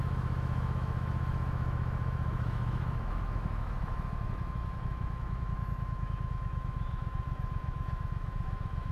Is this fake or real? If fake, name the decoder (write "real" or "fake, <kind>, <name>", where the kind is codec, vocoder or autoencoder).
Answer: fake, autoencoder, DAC-VAE